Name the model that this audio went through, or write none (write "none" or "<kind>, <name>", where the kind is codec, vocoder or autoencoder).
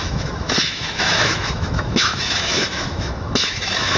autoencoder, DAC-VAE